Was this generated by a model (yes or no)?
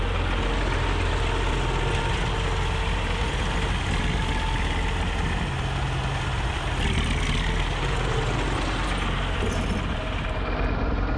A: no